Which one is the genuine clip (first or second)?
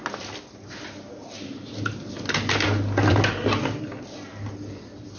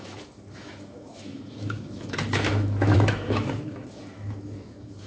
first